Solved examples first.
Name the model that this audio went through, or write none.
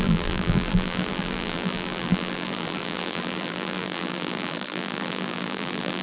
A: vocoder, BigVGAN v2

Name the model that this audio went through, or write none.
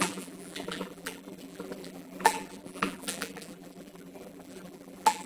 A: vocoder, BigVGAN v2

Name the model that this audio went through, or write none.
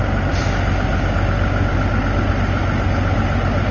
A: none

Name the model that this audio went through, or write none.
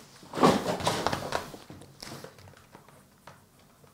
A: none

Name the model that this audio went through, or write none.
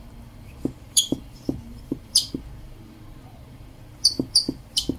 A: vocoder, BigVGAN v2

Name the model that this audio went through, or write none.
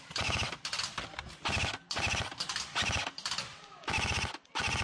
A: none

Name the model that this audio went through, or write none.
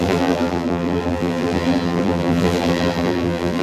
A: vocoder, BigVGAN v2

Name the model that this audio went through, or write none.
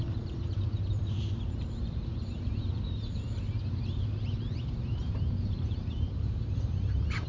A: vocoder, BigVGAN v2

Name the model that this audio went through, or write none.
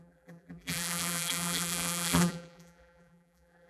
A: vocoder, BigVGAN v2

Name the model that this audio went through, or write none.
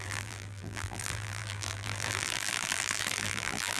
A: vocoder, BigVGAN v2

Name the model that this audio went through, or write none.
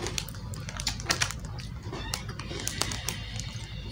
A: vocoder, BigVGAN v2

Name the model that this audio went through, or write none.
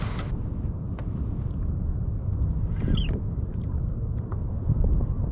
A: none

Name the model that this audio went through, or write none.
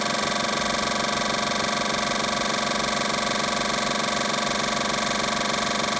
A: none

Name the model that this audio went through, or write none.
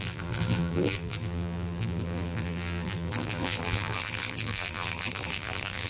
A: vocoder, BigVGAN v2